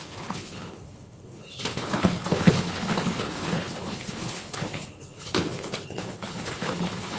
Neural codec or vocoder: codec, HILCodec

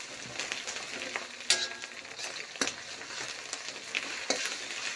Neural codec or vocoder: none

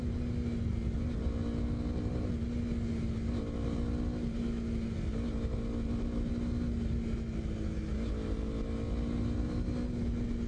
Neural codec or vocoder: none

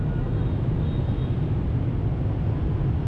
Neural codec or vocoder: none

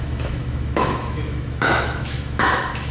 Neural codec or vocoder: autoencoder, DAC-VAE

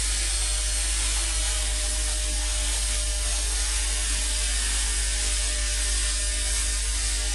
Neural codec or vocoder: none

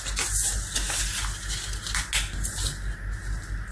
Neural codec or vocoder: none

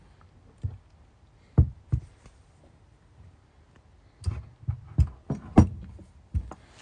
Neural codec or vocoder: none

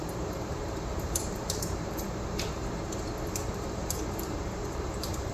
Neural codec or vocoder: vocoder, BigVGAN v2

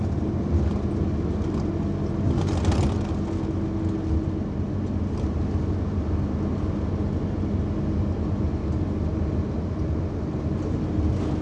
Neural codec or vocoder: none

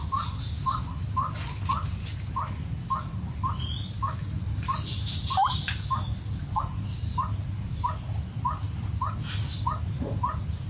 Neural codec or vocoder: none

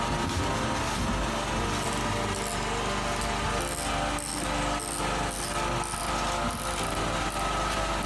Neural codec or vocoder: none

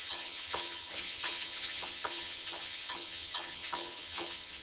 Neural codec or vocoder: vocoder, HiFi-GAN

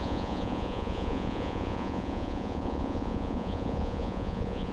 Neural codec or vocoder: vocoder, Vocos